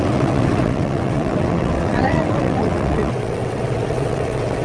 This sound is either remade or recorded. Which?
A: remade